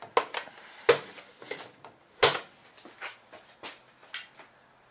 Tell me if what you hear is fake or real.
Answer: real